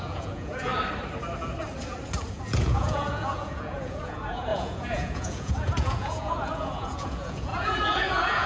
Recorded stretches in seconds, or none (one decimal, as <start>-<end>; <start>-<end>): 0.7-2.3